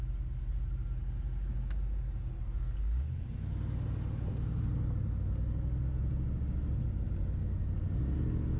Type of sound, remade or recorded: recorded